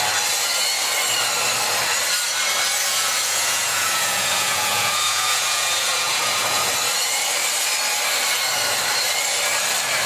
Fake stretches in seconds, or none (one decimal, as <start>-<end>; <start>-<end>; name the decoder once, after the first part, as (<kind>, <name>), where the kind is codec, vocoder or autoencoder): 2.8-6.7 (vocoder, Vocos)